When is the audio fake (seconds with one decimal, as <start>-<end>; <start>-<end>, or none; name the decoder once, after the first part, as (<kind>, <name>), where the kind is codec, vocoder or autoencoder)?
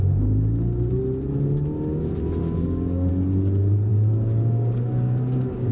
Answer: 0.0-1.0 (codec, DAC); 2.4-3.1; 3.9-5.7